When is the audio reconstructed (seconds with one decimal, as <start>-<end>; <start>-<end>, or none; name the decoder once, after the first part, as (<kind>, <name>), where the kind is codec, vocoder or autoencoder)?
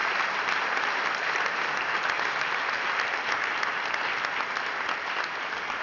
none